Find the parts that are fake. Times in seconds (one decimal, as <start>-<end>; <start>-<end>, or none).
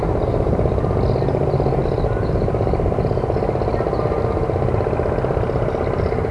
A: none